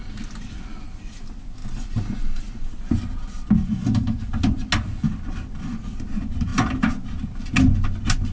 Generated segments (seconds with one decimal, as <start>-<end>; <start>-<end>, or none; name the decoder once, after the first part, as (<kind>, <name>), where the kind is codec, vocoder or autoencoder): none